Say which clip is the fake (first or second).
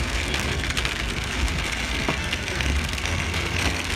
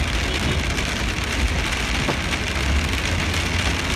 first